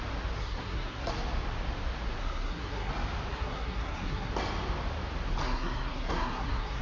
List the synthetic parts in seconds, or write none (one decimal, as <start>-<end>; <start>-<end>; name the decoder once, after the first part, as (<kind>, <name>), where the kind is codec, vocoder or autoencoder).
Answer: 0.4-1.1 (codec, SNAC); 2.2-2.9; 3.3-4.3; 5.4-6.8